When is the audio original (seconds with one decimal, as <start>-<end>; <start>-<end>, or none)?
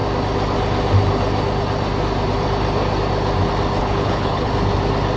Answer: 0.0-3.8; 4.5-5.2